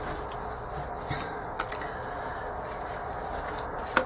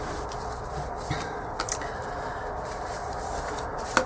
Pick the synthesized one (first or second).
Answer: second